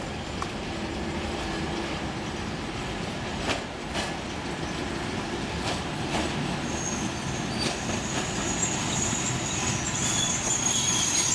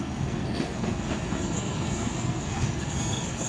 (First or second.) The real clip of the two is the first